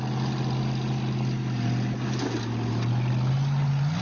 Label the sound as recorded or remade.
recorded